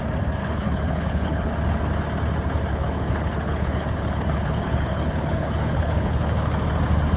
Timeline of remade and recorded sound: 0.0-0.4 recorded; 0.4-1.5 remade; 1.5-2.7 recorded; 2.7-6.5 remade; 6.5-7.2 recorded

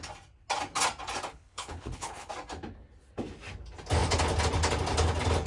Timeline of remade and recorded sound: 0.0-1.3 recorded; 1.3-2.3 remade; 2.3-5.5 recorded

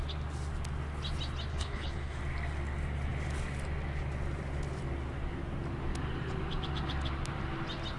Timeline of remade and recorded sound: 0.0-1.5 recorded; 1.5-2.2 remade; 2.2-8.0 recorded

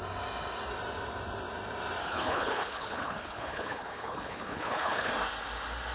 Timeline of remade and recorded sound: 0.0-2.0 recorded; 2.0-5.1 remade; 5.1-5.9 recorded

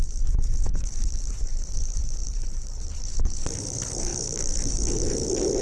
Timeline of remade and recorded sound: 0.0-5.6 remade

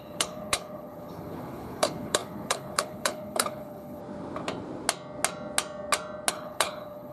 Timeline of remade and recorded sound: 0.0-4.0 remade; 4.0-6.3 recorded; 6.3-7.1 remade

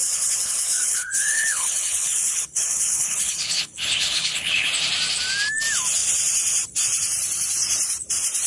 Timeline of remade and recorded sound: 0.0-4.7 remade; 4.7-8.5 recorded

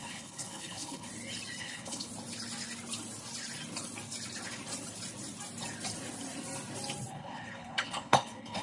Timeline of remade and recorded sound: 0.0-1.1 remade; 1.1-1.6 recorded; 1.6-2.1 remade; 2.1-7.1 recorded; 7.1-8.6 remade